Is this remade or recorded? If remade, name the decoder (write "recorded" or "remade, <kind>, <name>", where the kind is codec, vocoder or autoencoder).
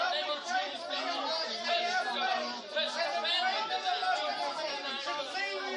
recorded